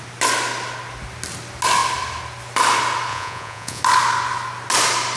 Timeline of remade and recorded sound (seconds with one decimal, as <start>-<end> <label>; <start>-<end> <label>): 0.0-3.1 recorded; 3.1-3.8 remade; 3.8-5.2 recorded